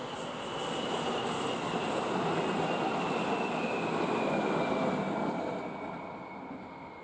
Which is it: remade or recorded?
recorded